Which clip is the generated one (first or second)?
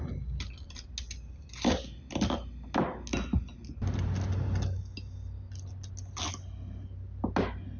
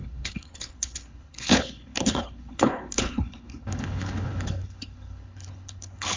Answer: second